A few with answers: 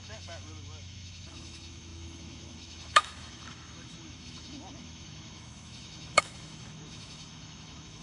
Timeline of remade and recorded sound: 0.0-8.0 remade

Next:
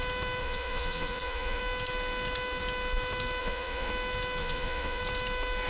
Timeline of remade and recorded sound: 0.0-0.4 recorded; 0.4-1.6 remade; 1.6-3.4 recorded; 3.4-3.9 remade; 3.9-4.4 recorded; 4.4-5.0 remade; 5.0-5.7 recorded

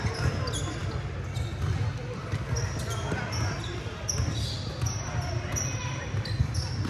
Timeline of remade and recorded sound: 0.0-5.8 recorded; 5.8-6.4 remade; 6.4-6.9 recorded

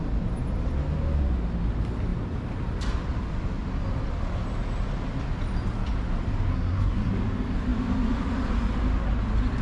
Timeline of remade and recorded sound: 0.0-6.5 recorded; 6.5-7.1 remade; 7.1-9.6 recorded

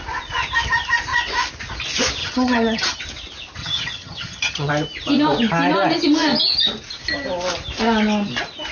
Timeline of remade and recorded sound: 0.0-2.2 recorded; 2.2-3.0 remade; 3.0-3.6 recorded; 3.6-4.7 remade; 4.7-8.7 recorded

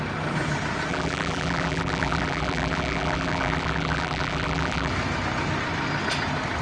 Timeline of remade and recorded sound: 0.0-0.9 recorded; 0.9-4.9 remade; 4.9-6.6 recorded

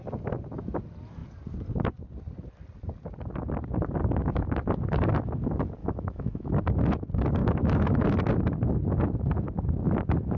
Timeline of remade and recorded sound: 0.0-5.8 recorded; 5.8-6.6 remade; 6.6-7.4 recorded; 7.4-8.1 remade; 8.1-10.4 recorded

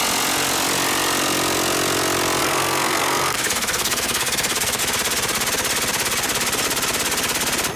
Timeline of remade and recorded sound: 0.0-2.4 recorded; 2.4-4.8 remade; 4.8-7.8 recorded